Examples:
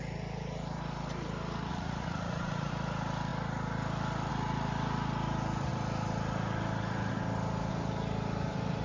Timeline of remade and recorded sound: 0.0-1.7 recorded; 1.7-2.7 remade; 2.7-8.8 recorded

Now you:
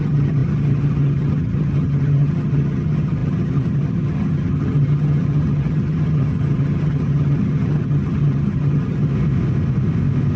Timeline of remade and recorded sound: 0.0-9.1 remade; 9.1-10.4 recorded

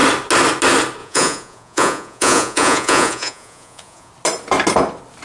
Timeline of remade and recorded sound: 0.0-1.0 recorded; 1.0-4.1 remade; 4.1-5.2 recorded

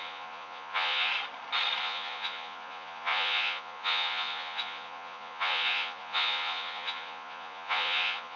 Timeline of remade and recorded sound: 0.0-1.1 remade; 1.1-1.8 recorded; 1.8-8.4 remade

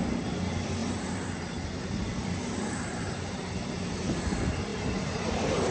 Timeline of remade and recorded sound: 0.0-0.8 recorded; 0.8-4.2 remade; 4.2-4.7 recorded; 4.7-5.7 remade

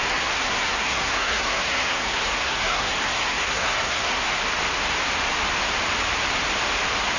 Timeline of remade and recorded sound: 0.0-4.3 remade; 4.3-7.2 recorded

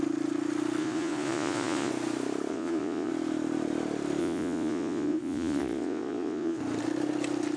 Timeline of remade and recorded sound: 0.0-0.8 recorded; 0.8-1.9 remade; 1.9-2.5 recorded; 2.5-3.1 remade; 3.1-4.2 recorded; 4.2-6.6 remade; 6.6-7.6 recorded